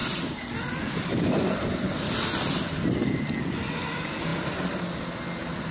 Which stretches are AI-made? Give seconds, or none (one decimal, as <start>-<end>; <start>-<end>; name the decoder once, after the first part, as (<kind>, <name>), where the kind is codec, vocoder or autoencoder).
none